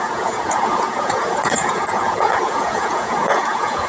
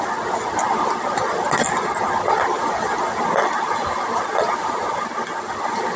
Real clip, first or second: second